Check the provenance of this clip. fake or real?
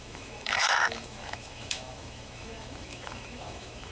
fake